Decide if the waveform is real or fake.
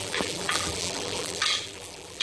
fake